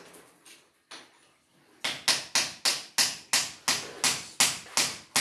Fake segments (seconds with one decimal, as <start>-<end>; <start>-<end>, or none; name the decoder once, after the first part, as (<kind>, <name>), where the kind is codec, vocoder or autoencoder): none